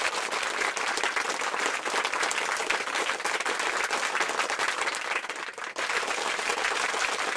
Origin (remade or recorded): recorded